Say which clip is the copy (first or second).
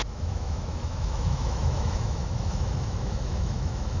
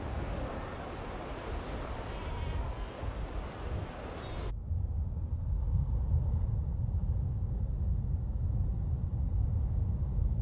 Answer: first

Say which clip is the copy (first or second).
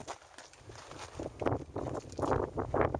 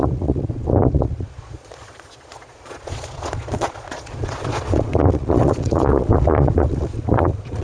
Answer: second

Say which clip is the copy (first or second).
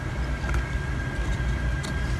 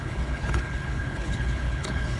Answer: second